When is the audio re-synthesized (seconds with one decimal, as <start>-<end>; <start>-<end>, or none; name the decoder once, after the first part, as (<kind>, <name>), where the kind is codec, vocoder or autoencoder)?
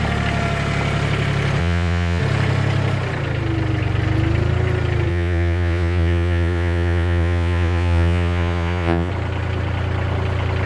1.6-2.2 (vocoder, Vocos); 5.1-9.1